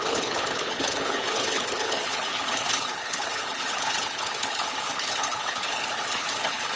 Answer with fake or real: fake